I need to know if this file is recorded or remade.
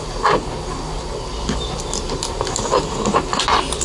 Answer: recorded